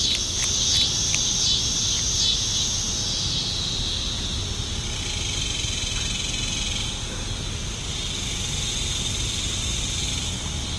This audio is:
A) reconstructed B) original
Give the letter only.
B